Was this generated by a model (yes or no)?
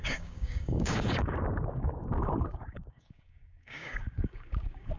yes